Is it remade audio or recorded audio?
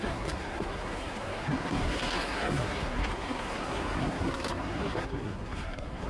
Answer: remade